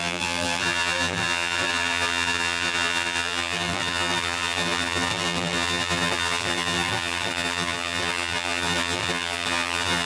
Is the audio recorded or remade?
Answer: remade